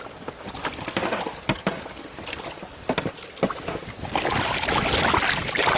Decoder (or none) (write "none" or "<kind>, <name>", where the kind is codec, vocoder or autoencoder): none